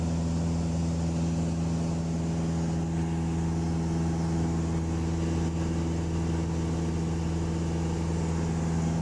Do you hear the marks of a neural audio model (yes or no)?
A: no